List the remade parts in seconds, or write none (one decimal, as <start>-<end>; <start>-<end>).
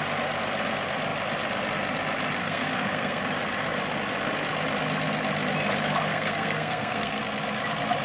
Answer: 2.4-3.2; 6.1-7.2